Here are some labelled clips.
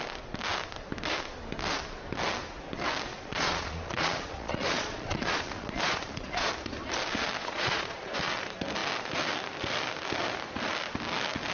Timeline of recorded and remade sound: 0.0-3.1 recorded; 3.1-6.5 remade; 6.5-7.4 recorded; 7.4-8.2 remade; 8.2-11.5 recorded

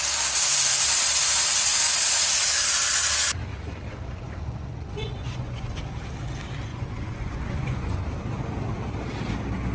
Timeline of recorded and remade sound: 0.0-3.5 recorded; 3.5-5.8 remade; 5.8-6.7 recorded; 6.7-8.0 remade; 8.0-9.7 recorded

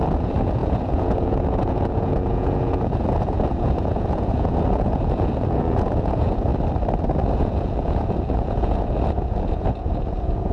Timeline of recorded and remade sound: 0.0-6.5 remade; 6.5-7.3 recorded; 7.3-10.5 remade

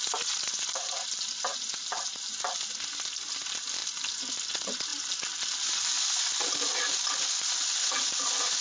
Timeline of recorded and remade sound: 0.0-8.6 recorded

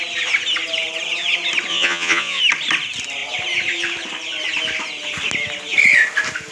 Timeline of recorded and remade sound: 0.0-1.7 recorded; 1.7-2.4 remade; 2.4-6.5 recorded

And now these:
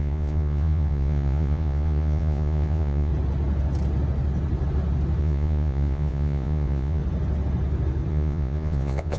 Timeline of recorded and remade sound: 0.0-3.1 remade; 3.1-5.2 recorded; 5.2-7.0 remade; 7.0-8.1 recorded; 8.1-9.2 remade